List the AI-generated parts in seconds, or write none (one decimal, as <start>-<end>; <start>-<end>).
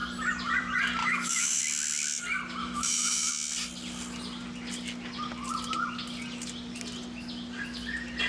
1.0-1.6; 2.6-3.3